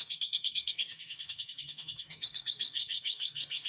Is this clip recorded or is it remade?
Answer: remade